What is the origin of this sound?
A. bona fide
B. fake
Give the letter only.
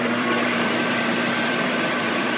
B